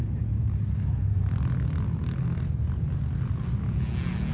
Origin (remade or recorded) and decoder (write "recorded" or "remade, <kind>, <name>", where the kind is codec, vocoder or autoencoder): recorded